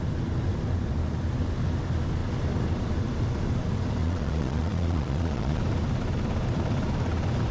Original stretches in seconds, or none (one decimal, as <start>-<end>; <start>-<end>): 0.0-4.0; 5.6-7.5